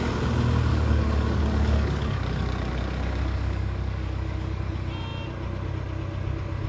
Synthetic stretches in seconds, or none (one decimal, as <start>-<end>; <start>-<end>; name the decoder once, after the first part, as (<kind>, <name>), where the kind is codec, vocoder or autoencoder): 0.7-4.6 (codec, DAC)